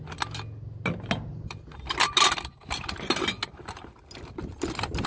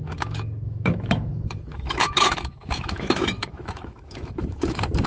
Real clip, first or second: first